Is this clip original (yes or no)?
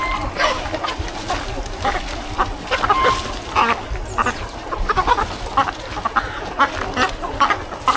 yes